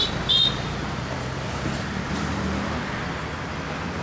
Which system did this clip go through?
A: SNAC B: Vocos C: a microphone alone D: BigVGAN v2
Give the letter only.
C